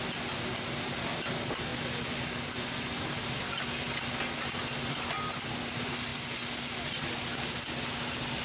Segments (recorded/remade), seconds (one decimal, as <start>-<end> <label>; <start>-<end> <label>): 0.0-8.4 recorded